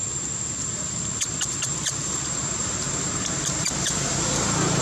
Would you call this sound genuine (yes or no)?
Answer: no